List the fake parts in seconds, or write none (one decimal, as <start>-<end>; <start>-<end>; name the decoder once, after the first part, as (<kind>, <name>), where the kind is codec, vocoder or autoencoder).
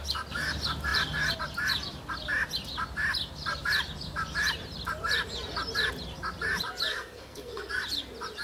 6.9-7.7 (codec, SNAC)